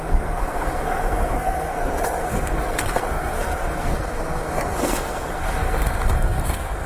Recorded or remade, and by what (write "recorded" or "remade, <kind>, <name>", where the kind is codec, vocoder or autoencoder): remade, codec, SNAC